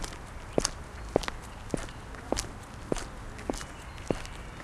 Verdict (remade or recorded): recorded